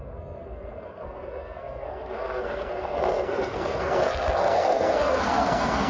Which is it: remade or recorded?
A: remade